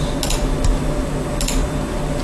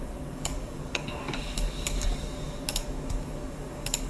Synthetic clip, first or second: second